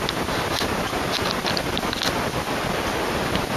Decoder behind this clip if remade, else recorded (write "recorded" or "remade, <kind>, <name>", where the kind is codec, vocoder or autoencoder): recorded